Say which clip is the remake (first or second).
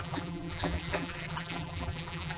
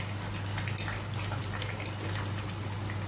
first